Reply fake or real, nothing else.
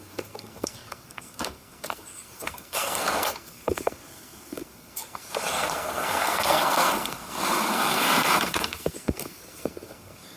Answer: fake